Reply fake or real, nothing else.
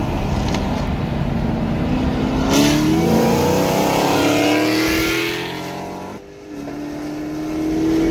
real